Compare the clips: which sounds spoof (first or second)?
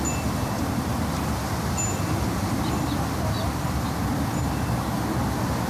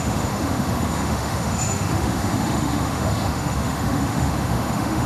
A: second